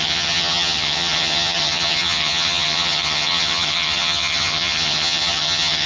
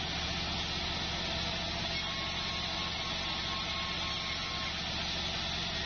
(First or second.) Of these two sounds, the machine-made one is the first